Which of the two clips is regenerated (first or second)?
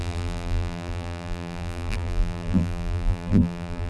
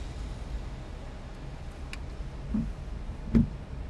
first